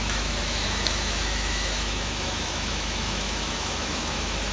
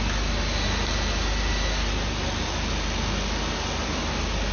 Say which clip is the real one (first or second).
second